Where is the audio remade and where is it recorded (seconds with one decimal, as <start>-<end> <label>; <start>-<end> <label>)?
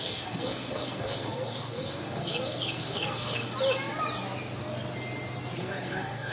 0.0-3.4 remade; 3.4-5.6 recorded; 5.6-6.3 remade